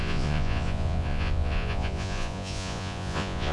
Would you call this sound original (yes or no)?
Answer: no